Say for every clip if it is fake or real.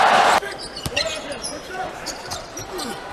fake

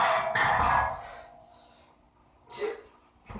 real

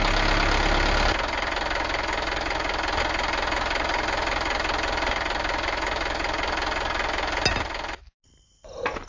real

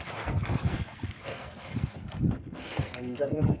fake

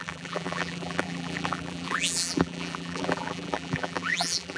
fake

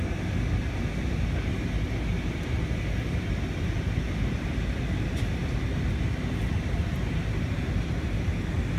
real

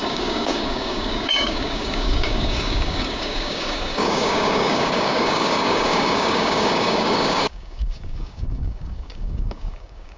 fake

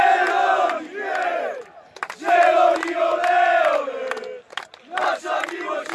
real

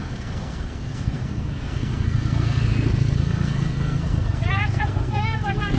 fake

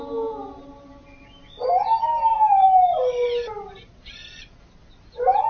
real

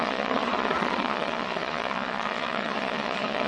fake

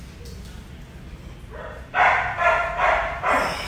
real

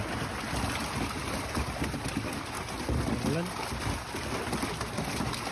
real